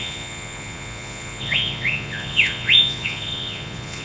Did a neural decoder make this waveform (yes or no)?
yes